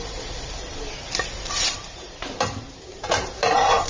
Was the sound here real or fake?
fake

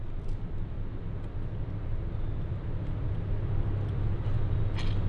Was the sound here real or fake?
real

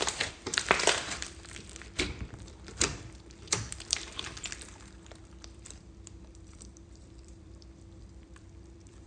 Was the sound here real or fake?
fake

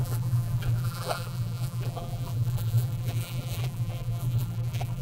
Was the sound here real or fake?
fake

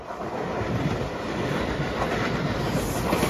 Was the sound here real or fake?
real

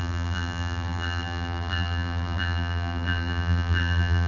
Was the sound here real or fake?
fake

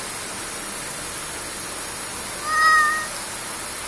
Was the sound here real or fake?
real